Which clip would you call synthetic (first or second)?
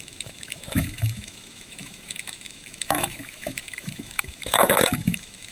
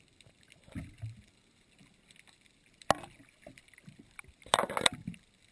first